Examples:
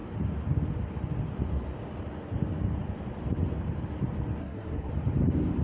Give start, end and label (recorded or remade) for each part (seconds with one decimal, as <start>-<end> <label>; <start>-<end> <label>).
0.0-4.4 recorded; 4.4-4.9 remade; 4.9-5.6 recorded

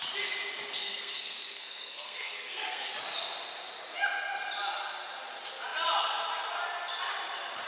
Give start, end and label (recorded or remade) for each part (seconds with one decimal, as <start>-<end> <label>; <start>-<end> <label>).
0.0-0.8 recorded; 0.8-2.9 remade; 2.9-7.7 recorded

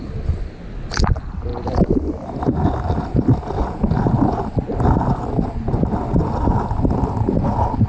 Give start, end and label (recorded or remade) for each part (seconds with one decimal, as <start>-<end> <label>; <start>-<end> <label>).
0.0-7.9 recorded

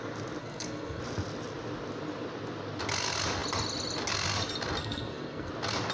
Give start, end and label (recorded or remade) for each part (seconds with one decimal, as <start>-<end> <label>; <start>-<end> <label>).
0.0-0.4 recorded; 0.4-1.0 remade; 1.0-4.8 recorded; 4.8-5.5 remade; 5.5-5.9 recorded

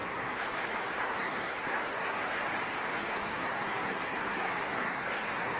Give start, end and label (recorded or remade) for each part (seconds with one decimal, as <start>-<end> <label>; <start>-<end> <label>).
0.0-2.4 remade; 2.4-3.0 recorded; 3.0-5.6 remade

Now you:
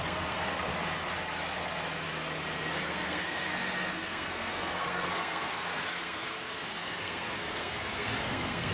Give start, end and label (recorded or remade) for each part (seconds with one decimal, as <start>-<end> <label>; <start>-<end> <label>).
0.0-0.7 remade; 0.7-2.7 recorded; 2.7-8.7 remade